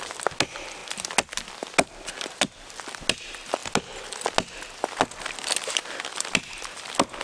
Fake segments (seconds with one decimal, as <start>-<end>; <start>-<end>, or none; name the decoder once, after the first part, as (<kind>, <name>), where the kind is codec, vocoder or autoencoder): none